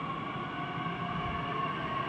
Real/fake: real